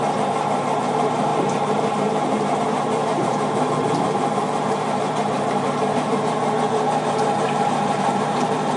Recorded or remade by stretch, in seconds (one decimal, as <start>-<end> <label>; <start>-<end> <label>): 0.0-8.8 remade